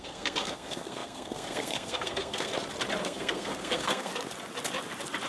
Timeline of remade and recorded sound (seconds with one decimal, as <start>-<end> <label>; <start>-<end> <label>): 0.0-2.5 remade; 2.5-3.0 recorded; 3.0-4.1 remade; 4.1-5.3 recorded